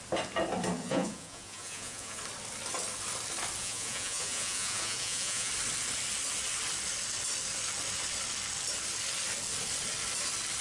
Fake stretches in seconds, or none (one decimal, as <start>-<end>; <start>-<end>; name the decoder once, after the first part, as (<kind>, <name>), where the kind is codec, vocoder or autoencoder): 0.8-2.2 (vocoder, Vocos); 3.6-5.5